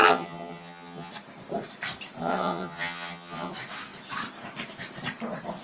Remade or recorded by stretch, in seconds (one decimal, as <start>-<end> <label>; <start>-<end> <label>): 0.0-1.1 remade; 1.1-2.2 recorded; 2.2-3.5 remade; 3.5-5.6 recorded